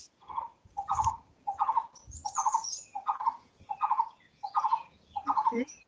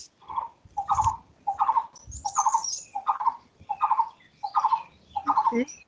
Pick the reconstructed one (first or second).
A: first